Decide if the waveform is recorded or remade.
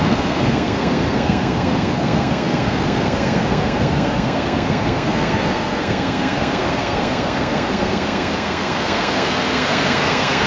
remade